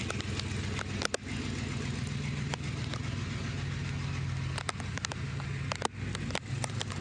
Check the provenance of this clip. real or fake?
real